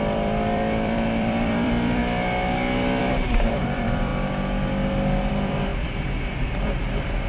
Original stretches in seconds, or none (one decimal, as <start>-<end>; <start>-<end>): 2.0-3.0; 4.1-5.3